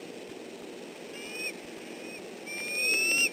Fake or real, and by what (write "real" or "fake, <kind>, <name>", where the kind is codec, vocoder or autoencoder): real